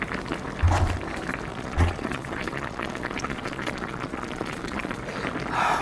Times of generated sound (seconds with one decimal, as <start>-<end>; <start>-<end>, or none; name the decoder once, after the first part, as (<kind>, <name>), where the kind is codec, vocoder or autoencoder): 1.5-5.0 (vocoder, Vocos)